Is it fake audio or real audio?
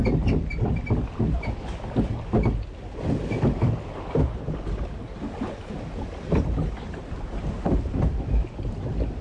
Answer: real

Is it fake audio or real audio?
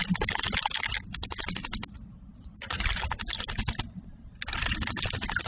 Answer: real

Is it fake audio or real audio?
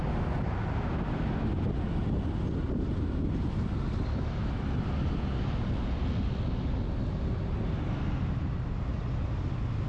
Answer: real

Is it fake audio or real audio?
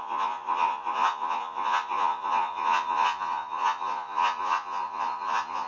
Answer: fake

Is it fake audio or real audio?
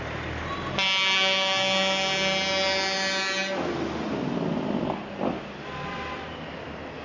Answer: real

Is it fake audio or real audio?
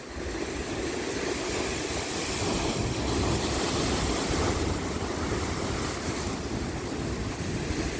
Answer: real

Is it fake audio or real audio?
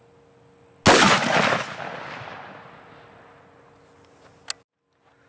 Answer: real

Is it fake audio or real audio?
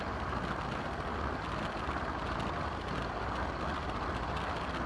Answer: real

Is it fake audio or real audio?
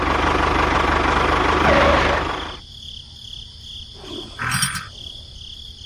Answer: real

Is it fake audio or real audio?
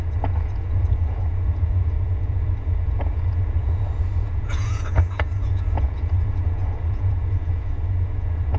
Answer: fake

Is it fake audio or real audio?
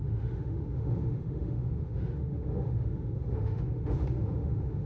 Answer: fake